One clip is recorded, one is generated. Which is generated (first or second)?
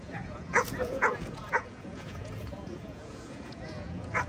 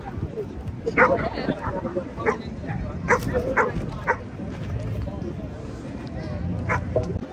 first